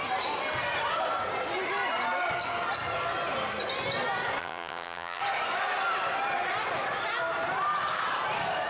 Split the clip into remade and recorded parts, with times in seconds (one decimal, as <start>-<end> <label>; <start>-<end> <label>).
0.0-4.4 recorded; 4.4-5.2 remade; 5.2-8.7 recorded